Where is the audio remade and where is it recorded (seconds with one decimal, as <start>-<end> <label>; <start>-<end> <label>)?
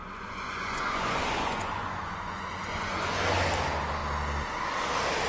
0.0-3.2 remade; 3.2-5.3 recorded